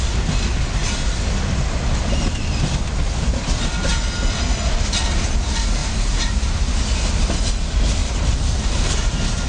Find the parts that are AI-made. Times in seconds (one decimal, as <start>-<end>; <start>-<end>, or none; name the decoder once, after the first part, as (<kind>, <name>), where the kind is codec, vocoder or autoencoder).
5.8-6.6 (vocoder, BigVGAN v2); 8.0-9.5